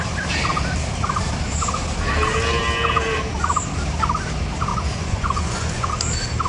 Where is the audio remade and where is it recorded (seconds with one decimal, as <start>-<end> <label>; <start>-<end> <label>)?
0.0-4.7 recorded; 4.7-5.9 remade; 5.9-6.5 recorded